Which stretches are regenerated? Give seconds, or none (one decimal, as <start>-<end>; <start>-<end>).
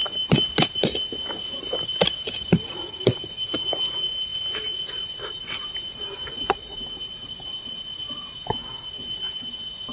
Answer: none